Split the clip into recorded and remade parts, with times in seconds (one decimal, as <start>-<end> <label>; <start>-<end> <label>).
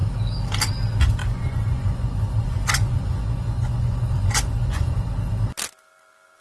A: 0.0-1.2 recorded; 1.2-5.0 remade; 5.0-6.4 recorded